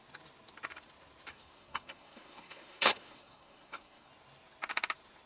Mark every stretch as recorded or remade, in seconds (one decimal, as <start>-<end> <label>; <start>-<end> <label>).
0.0-1.3 recorded; 1.3-4.1 remade; 4.1-5.3 recorded